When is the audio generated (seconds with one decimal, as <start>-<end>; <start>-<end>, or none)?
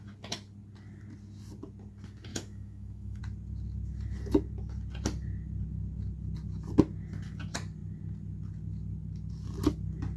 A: 2.3-3.2